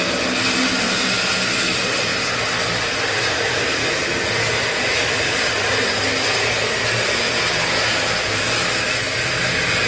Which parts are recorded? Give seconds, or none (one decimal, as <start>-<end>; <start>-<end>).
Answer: 0.0-4.6; 5.9-9.9